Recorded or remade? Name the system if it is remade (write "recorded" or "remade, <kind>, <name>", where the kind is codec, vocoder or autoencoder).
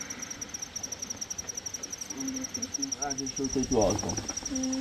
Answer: recorded